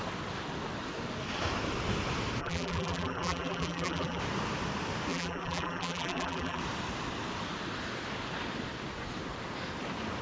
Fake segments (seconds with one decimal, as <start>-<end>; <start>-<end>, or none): 2.4-4.2; 5.1-6.6